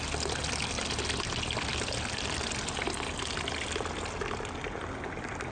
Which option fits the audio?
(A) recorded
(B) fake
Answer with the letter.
A